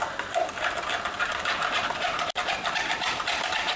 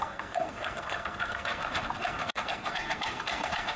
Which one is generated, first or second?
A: second